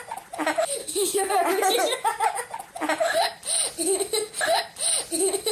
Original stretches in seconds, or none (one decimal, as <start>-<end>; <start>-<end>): 0.0-0.8; 1.4-5.5